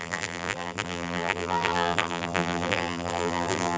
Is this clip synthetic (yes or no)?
yes